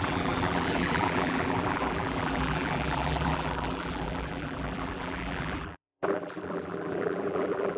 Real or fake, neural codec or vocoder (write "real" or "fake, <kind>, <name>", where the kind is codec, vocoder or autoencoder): fake, vocoder, BigVGAN v2